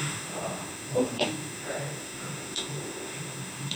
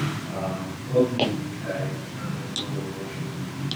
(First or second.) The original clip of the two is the second